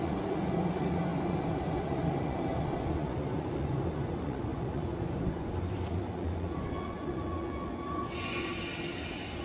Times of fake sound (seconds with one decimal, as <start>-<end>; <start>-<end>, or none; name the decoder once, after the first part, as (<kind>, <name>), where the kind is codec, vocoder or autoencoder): 0.0-8.5 (vocoder, Vocos)